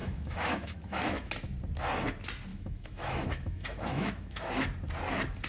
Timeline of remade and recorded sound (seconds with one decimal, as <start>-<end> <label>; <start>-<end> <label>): 0.0-1.3 remade; 1.3-2.5 recorded; 2.5-4.5 remade; 4.5-5.5 recorded

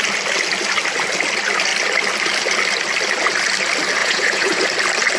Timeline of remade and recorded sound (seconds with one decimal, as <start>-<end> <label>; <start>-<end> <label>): 0.0-4.0 recorded; 4.0-4.6 remade; 4.6-5.2 recorded

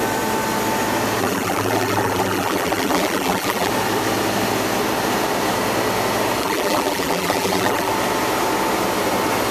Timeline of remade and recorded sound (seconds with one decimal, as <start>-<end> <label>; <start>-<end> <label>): 0.0-1.2 recorded; 1.2-3.7 remade; 3.7-6.4 recorded; 6.4-7.9 remade; 7.9-9.5 recorded